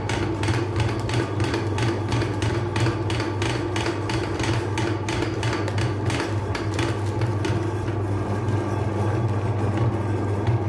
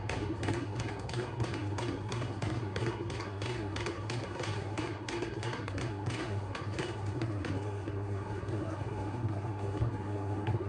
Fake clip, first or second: second